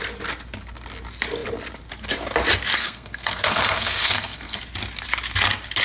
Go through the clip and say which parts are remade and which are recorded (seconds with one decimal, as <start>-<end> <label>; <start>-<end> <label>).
0.0-2.8 recorded; 2.8-4.6 remade; 4.6-5.8 recorded